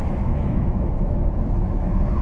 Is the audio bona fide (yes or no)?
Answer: no